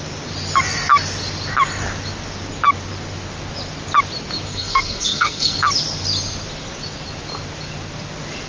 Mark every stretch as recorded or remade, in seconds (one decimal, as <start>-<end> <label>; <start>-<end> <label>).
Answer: 0.0-4.5 recorded; 4.5-5.6 remade; 5.6-8.5 recorded